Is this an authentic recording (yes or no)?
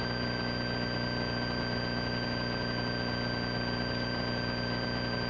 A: yes